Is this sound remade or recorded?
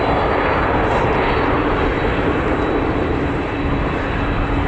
recorded